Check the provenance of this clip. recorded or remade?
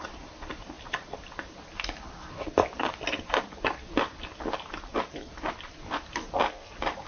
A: recorded